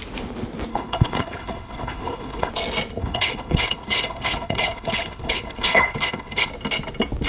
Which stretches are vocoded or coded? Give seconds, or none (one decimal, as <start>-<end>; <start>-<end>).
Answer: 0.7-2.5; 3.0-6.5